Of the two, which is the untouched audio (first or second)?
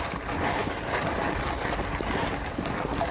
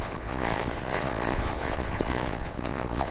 first